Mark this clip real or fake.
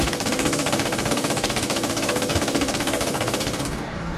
fake